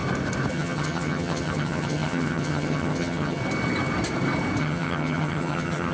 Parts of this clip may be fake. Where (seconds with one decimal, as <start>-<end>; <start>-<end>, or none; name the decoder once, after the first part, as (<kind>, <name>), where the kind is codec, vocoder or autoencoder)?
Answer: 0.5-3.4 (vocoder, HiFi-GAN); 4.6-5.9